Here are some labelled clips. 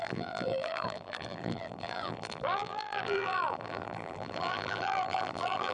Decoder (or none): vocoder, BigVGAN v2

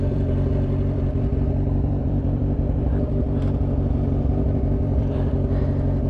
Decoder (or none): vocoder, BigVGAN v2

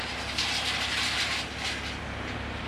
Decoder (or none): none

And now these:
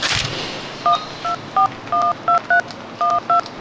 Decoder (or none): none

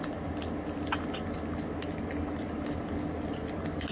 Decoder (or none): none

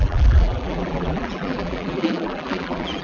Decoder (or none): vocoder, BigVGAN v2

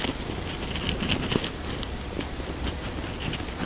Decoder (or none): vocoder, BigVGAN v2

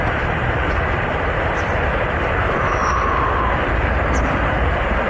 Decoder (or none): none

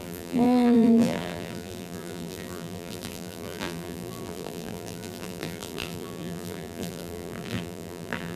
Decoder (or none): vocoder, BigVGAN v2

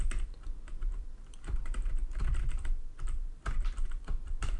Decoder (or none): vocoder, BigVGAN v2